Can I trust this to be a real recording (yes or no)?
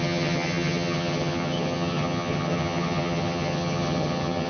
no